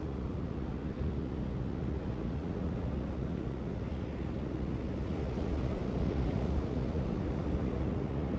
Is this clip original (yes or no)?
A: no